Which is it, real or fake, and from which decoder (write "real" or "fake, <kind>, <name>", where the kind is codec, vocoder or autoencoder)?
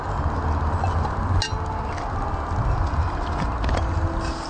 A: real